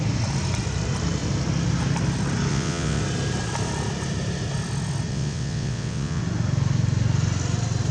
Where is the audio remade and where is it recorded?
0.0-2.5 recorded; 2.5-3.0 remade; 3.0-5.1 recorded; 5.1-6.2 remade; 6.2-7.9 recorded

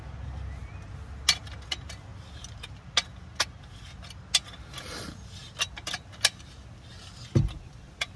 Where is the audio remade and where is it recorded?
0.0-8.2 recorded

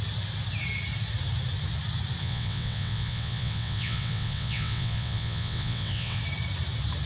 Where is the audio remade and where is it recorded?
0.0-2.2 recorded; 2.2-6.2 remade; 6.2-7.1 recorded

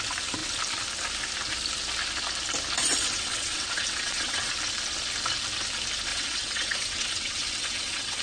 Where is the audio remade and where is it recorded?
0.0-2.9 recorded; 2.9-4.5 remade; 4.5-6.1 recorded; 6.1-8.2 remade

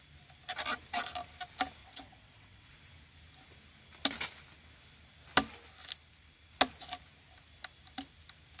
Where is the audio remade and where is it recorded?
0.0-1.8 recorded; 1.8-2.7 remade; 2.7-8.6 recorded

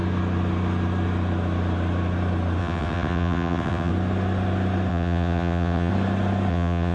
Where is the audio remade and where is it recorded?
0.0-2.6 recorded; 2.6-3.9 remade; 3.9-4.9 recorded; 4.9-5.9 remade; 5.9-6.5 recorded; 6.5-6.9 remade

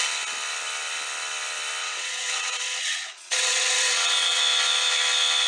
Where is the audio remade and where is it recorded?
0.0-1.8 recorded; 1.8-4.4 remade; 4.4-5.5 recorded